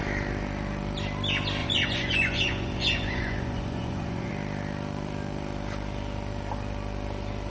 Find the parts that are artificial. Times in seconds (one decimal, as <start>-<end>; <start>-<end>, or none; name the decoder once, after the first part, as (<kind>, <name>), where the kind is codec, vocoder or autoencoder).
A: 1.6-4.3 (vocoder, Vocos)